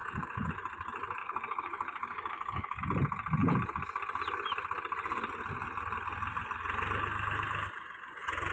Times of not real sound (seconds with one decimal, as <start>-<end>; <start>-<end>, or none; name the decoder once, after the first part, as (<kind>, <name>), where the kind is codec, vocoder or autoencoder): 0.0-0.5 (codec, DAC); 1.2-2.8